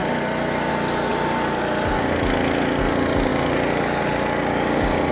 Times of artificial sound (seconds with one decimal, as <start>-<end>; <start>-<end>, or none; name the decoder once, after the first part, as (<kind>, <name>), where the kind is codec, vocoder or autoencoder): 0.0-0.7 (vocoder, BigVGAN v2); 1.1-2.8